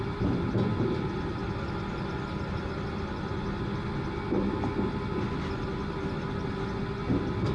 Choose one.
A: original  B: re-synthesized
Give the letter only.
A